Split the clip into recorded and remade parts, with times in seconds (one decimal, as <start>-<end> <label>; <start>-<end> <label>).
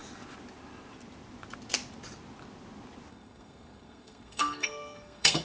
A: 0.0-3.1 recorded; 3.1-5.4 remade